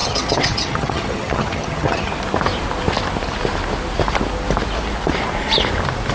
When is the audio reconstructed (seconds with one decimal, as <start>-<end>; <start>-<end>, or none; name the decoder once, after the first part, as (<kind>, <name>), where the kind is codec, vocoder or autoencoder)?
0.0-2.1 (vocoder, HiFi-GAN)